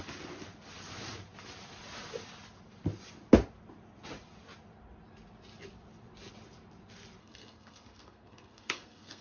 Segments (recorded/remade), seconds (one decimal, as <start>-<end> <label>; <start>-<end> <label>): 0.0-7.2 recorded; 7.2-9.2 remade